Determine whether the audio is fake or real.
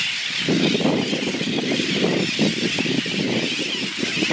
real